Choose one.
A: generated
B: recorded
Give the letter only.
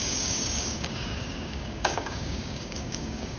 A